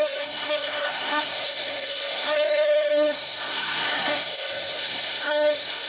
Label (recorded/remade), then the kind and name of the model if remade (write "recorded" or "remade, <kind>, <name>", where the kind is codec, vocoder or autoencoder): remade, codec, SNAC